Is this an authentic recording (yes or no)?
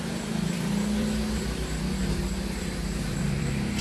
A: no